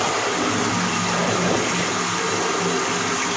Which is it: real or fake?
real